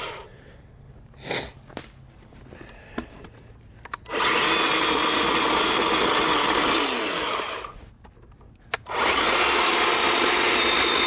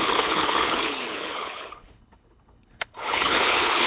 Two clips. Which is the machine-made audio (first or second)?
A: second